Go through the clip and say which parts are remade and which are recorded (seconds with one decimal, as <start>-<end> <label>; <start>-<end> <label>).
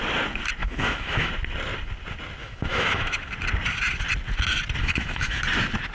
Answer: 0.0-0.6 recorded; 0.6-1.3 remade; 1.3-2.4 recorded; 2.4-3.3 remade; 3.3-4.8 recorded; 4.8-5.4 remade; 5.4-5.9 recorded